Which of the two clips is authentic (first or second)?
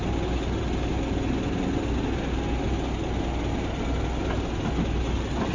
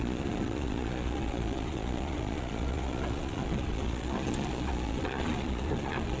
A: first